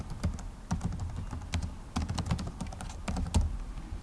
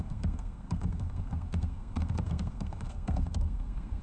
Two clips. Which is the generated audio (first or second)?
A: second